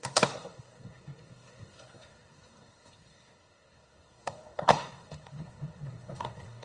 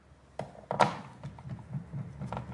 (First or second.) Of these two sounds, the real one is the second